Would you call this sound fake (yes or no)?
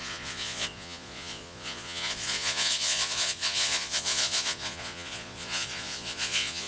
yes